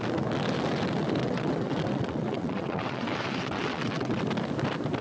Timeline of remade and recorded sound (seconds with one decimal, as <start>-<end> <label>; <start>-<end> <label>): 0.0-1.2 recorded; 1.2-4.2 remade; 4.2-5.0 recorded